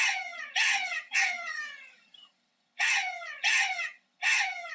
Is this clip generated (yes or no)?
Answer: yes